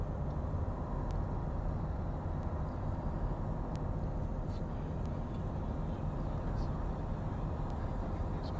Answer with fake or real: real